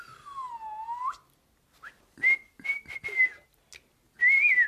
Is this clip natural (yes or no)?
yes